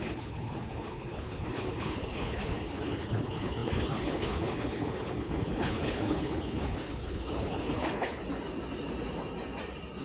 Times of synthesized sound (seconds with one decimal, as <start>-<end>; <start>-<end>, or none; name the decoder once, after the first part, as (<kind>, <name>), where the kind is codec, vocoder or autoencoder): 0.0-8.2 (codec, HILCodec)